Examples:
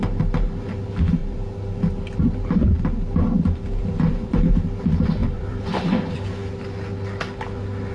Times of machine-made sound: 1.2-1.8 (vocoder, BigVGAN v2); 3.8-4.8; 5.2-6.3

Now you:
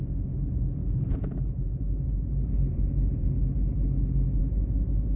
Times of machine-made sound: 0.8-3.3 (vocoder, BigVGAN v2)

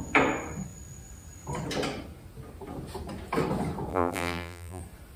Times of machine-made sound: 3.9-4.8 (vocoder, BigVGAN v2)

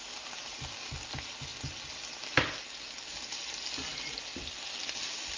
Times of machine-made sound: none

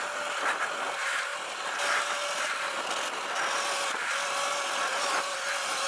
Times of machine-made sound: none

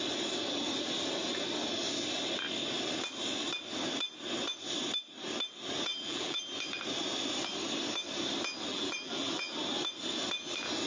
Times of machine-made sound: 5.9-6.4 (vocoder, BigVGAN v2); 8.7-9.5

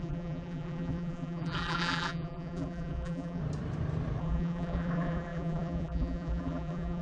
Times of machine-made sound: 0.0-3.4 (vocoder, BigVGAN v2); 4.2-7.0

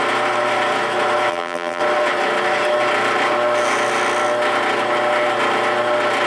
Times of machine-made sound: 1.3-1.8 (vocoder, BigVGAN v2)